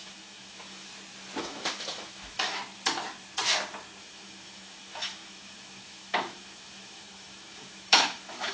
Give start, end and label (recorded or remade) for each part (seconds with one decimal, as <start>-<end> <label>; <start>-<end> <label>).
0.0-0.9 remade; 0.9-1.4 recorded; 1.4-2.6 remade; 2.6-4.0 recorded; 4.0-8.5 remade

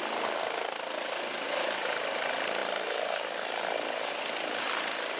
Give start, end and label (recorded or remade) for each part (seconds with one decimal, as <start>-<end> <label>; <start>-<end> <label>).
0.0-5.2 recorded

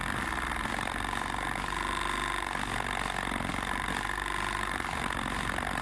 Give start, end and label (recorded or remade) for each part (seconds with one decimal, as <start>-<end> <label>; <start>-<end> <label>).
0.0-5.8 recorded

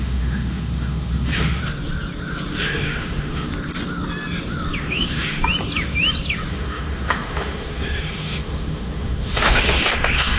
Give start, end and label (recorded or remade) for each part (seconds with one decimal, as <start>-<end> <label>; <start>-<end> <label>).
0.0-1.6 remade; 1.6-2.6 recorded; 2.6-3.5 remade; 3.5-4.8 recorded; 4.8-5.4 remade; 5.4-6.5 recorded; 6.5-10.4 remade

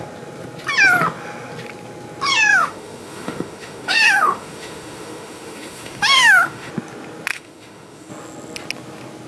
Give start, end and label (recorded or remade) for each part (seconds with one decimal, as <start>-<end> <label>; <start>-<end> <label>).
0.0-2.5 recorded; 2.5-6.7 remade; 6.7-7.3 recorded; 7.3-8.1 remade; 8.1-9.3 recorded

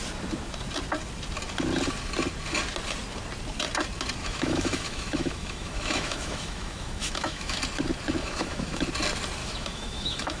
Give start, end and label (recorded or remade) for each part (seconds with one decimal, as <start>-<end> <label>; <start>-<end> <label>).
0.0-4.2 recorded; 4.2-7.6 remade; 7.6-8.2 recorded; 8.2-8.9 remade; 8.9-9.4 recorded; 9.4-10.4 remade